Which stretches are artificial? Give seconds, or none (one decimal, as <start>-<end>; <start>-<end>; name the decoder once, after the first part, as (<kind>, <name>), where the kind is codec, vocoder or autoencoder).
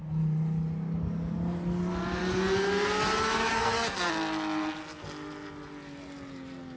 3.5-4.1 (codec, SNAC)